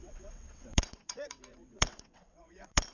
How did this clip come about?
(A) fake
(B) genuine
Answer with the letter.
A